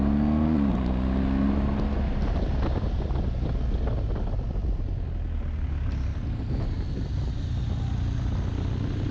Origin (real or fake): real